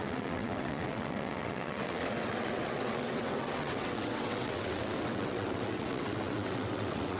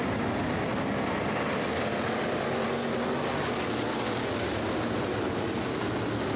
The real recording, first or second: second